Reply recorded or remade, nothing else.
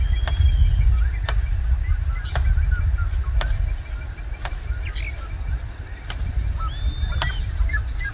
recorded